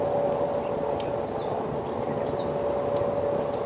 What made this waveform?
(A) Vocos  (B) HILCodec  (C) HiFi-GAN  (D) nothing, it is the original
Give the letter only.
D